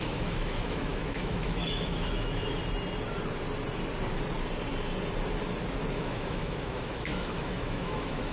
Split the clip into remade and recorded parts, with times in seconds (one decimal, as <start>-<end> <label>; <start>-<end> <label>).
0.0-2.6 remade; 2.6-5.9 recorded; 5.9-8.3 remade